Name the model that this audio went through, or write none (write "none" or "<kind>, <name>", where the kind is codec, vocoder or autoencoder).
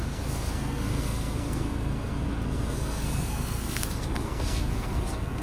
codec, SNAC